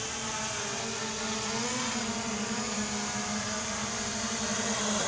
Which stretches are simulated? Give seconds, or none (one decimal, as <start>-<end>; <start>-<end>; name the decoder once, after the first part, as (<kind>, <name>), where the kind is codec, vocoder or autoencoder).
1.8-4.4 (vocoder, BigVGAN v2)